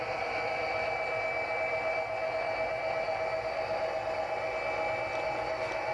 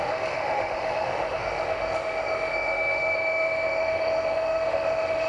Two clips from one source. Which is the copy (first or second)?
second